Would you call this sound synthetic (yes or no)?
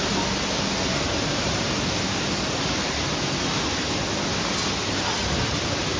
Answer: no